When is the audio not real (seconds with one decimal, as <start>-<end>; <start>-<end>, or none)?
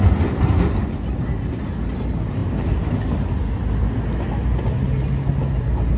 none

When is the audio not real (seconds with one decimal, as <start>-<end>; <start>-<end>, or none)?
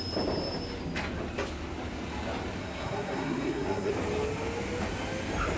2.6-3.9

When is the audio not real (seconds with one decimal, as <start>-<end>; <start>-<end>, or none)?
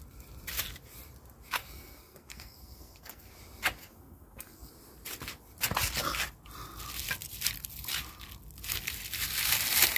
1.6-3.3; 3.8-4.7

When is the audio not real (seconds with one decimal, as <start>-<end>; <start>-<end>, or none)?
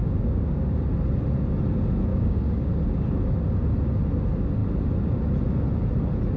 0.0-0.9; 2.1-2.7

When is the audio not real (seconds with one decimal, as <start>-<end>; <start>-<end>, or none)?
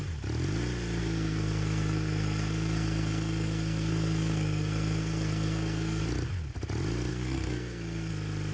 1.0-6.0; 7.1-8.1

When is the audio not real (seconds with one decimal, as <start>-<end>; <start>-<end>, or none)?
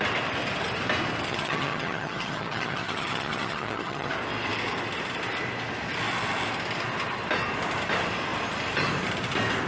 1.3-4.1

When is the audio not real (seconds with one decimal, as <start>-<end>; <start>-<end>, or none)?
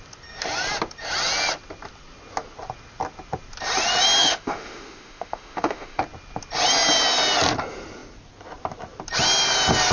4.2-6.0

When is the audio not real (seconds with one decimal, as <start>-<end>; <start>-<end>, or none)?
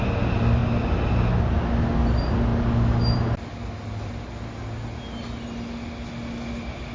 none